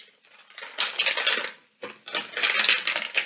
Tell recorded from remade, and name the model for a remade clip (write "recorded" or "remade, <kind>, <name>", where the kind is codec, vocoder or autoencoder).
recorded